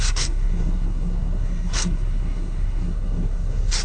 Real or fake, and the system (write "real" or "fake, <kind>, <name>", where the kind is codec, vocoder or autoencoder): fake, codec, SNAC